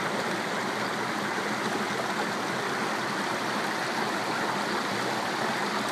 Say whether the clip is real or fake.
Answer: real